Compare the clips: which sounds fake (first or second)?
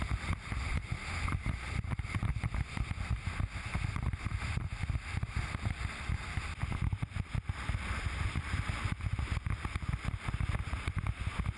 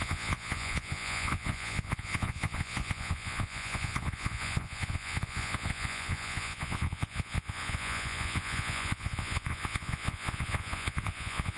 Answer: second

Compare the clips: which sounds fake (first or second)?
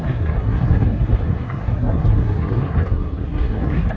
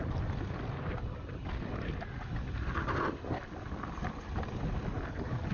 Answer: first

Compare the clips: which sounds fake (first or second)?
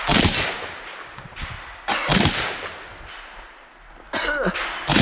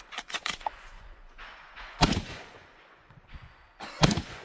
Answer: second